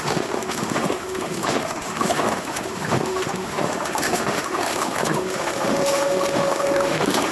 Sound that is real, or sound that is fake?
fake